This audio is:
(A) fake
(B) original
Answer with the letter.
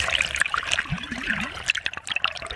A